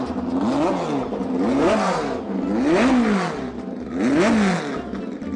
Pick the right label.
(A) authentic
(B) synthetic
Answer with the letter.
A